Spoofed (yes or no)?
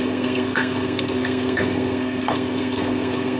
yes